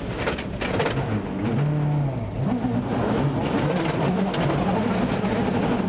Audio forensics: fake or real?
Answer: real